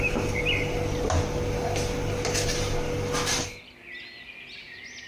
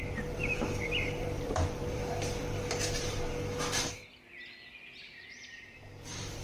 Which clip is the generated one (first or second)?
second